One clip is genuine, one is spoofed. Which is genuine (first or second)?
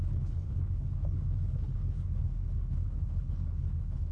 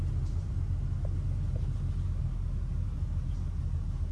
second